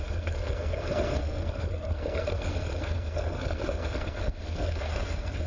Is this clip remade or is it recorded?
remade